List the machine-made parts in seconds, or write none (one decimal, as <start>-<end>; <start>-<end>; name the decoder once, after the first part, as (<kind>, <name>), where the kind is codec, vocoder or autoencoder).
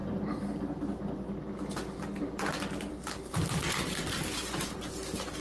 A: none